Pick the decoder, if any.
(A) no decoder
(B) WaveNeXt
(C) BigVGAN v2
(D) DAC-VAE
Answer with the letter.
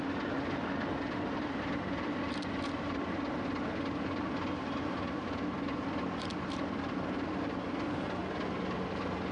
A